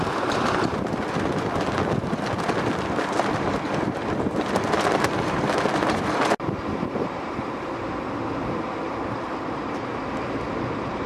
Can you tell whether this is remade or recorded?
remade